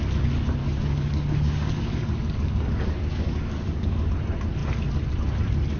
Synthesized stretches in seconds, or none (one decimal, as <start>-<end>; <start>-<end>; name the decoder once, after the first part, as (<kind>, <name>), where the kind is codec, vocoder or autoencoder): 0.6-4.1 (codec, DAC)

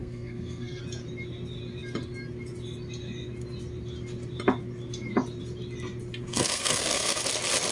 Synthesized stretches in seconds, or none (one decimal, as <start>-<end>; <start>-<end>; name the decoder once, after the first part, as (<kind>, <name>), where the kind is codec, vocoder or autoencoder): 0.0-0.8 (codec, SNAC); 6.3-7.2

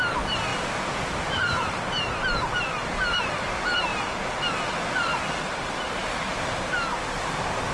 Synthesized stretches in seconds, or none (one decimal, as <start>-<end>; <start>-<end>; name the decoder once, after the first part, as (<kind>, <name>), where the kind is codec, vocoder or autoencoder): 0.5-1.8 (vocoder, BigVGAN v2)

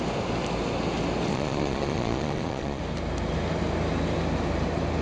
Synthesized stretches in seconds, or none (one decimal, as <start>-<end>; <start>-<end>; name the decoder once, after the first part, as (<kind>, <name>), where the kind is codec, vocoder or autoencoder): 1.3-2.8 (vocoder, Vocos)

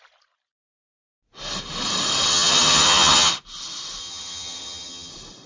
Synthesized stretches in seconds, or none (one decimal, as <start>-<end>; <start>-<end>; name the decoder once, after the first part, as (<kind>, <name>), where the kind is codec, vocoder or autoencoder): 2.3-3.3 (vocoder, HiFi-GAN); 4.0-5.1